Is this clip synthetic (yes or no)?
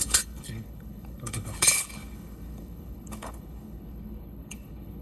yes